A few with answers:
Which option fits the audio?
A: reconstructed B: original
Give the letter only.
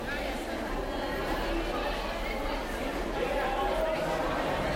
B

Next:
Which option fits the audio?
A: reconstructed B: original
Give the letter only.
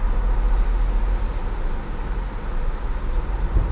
B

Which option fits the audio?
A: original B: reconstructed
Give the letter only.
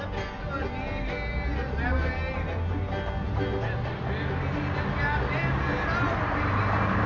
A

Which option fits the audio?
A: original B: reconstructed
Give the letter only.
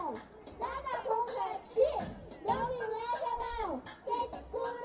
A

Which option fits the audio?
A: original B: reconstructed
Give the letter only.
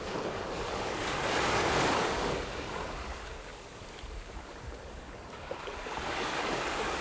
B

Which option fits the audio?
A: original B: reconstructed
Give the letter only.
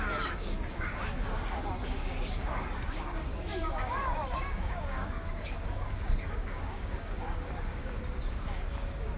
B